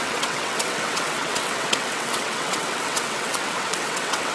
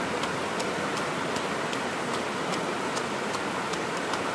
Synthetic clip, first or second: first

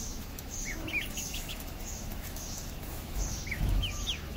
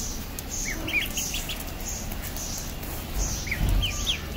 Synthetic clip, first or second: first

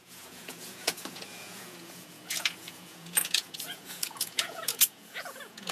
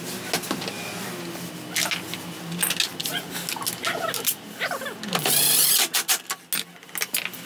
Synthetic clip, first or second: first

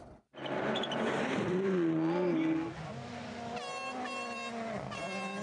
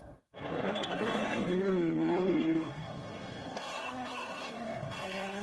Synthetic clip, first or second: second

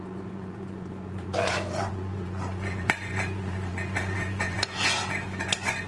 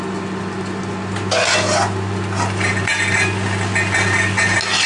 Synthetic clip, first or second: first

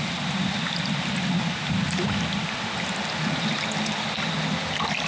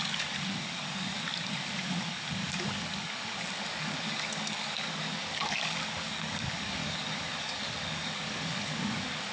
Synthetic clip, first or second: second